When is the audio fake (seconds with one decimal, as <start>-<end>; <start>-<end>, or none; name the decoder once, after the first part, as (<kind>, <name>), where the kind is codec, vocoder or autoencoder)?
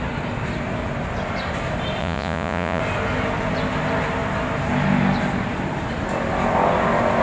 2.0-2.8 (vocoder, Vocos)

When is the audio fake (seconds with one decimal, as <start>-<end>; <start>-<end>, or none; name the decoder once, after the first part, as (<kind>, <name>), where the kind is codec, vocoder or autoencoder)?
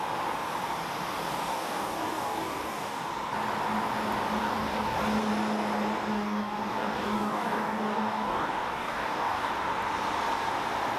1.5-3.1 (codec, DAC); 4.4-5.0; 6.1-9.5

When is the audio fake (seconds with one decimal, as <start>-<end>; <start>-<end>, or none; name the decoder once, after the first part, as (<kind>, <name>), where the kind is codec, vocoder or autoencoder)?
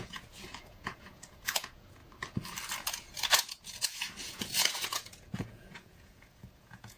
0.0-2.0 (vocoder, Vocos); 2.9-7.0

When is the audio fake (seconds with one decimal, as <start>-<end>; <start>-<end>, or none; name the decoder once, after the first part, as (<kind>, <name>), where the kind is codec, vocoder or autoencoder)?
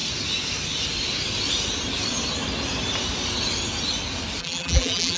4.4-5.2 (vocoder, BigVGAN v2)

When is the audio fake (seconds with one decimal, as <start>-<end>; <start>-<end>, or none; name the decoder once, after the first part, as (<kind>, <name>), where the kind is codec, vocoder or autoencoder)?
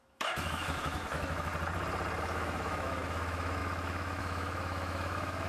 0.0-1.5 (autoencoder, DAC-VAE); 2.2-5.5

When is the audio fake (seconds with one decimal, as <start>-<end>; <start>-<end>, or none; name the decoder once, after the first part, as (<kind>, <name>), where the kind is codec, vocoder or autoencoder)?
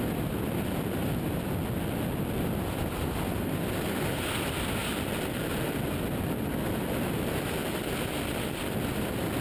4.8-6.1 (vocoder, BigVGAN v2)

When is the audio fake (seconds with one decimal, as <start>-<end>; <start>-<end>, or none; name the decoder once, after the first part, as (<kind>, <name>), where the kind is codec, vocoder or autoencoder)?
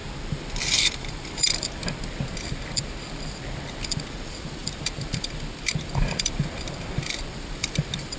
0.6-1.8 (vocoder, BigVGAN v2); 2.4-8.2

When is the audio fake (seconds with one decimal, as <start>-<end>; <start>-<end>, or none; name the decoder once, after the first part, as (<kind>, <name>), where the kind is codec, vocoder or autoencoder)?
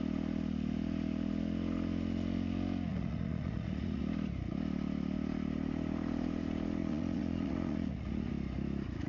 2.9-4.0 (vocoder, Vocos); 6.8-8.3